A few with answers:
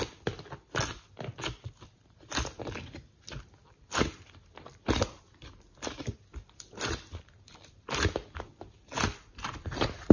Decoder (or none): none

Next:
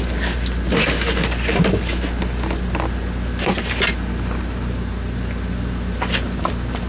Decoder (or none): none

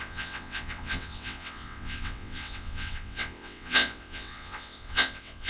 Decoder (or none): vocoder, WaveNeXt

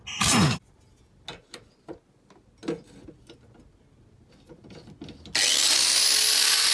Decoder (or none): none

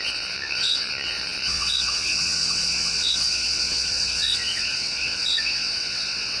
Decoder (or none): vocoder, WaveNeXt